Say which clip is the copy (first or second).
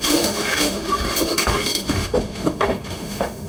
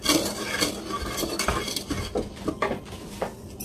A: first